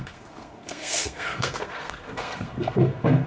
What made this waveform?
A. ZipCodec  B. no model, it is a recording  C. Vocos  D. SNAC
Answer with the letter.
D